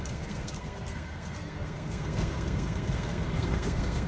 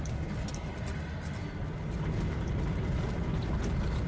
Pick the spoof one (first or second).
first